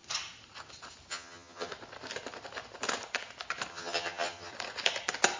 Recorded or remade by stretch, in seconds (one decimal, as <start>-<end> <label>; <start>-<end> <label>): 0.0-1.1 recorded; 1.1-1.7 remade; 1.7-3.7 recorded; 3.7-4.5 remade; 4.5-5.4 recorded